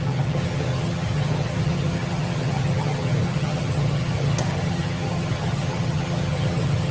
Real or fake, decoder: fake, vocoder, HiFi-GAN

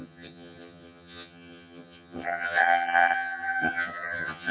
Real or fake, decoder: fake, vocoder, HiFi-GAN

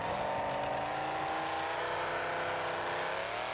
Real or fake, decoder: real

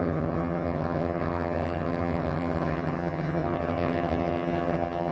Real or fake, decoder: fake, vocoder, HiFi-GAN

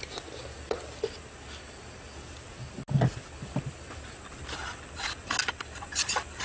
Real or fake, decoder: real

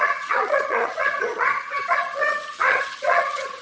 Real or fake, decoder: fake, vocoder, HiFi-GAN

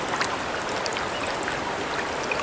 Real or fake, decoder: real